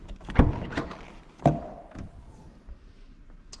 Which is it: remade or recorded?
recorded